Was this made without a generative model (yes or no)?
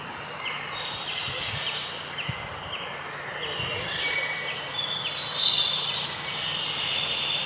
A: yes